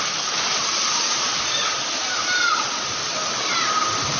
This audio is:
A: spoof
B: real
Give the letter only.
B